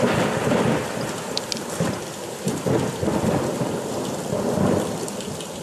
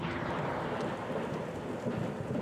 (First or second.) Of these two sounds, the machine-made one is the first